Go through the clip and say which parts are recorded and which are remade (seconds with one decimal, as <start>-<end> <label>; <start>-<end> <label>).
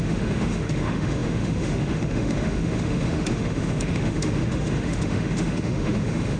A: 0.0-6.4 remade